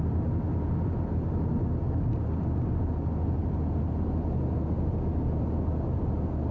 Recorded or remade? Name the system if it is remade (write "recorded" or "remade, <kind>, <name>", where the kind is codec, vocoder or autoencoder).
recorded